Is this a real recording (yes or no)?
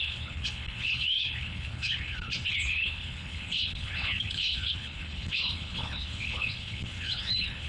no